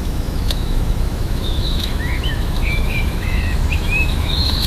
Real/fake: fake